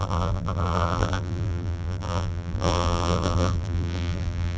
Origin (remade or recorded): remade